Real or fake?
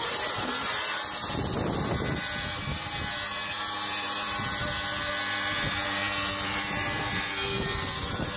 fake